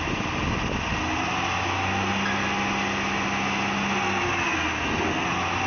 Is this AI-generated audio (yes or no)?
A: no